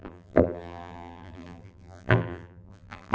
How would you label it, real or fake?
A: fake